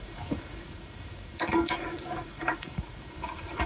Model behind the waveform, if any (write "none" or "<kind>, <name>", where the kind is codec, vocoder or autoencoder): codec, DAC